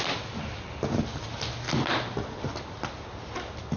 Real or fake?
real